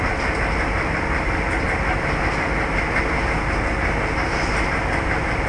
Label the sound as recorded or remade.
recorded